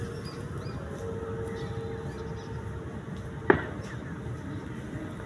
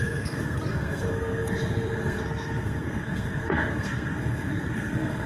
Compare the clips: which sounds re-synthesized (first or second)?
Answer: second